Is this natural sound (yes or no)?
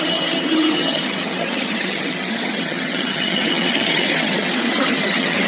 no